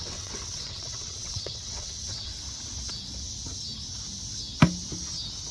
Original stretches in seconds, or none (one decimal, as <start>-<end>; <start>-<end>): 2.3-5.5